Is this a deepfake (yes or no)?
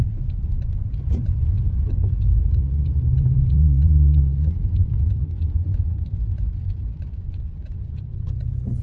yes